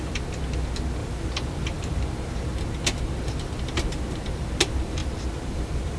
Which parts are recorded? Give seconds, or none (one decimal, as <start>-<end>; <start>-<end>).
0.0-1.0; 2.0-5.0